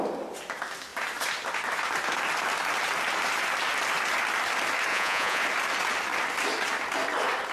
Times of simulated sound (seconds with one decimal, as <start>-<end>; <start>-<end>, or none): 4.9-5.4